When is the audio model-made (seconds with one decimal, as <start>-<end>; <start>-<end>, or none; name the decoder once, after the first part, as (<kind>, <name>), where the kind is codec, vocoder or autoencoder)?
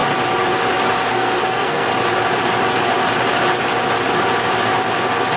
0.9-1.9 (codec, SNAC)